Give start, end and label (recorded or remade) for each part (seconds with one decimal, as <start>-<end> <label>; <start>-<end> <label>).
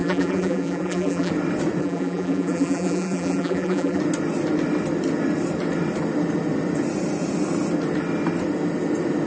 0.0-1.3 remade; 1.3-1.8 recorded; 1.8-4.0 remade; 4.0-9.3 recorded